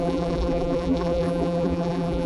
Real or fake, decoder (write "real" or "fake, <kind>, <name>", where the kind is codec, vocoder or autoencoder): fake, vocoder, BigVGAN v2